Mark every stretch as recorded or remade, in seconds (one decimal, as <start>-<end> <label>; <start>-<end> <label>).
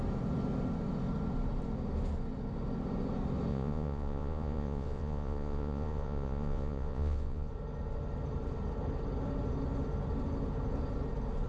0.0-3.5 recorded; 3.5-7.5 remade; 7.5-11.5 recorded